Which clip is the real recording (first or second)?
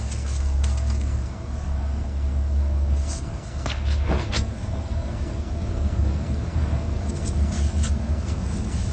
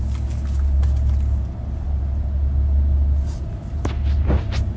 second